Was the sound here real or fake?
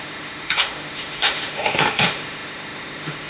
fake